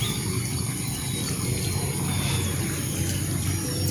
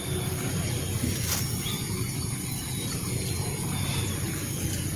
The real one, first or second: first